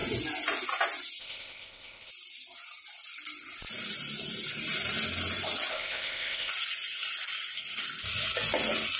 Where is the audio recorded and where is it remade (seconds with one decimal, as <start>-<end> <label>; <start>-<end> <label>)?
0.0-1.2 recorded; 1.2-2.1 remade; 2.1-5.7 recorded; 5.7-6.5 remade; 6.5-9.0 recorded